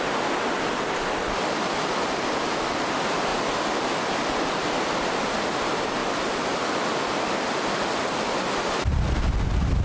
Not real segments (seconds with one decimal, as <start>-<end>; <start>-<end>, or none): none